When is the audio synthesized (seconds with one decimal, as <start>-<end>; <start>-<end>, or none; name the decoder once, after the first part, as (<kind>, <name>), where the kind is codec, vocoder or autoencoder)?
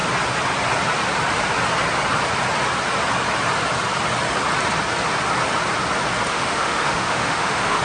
6.3-7.8 (autoencoder, DAC-VAE)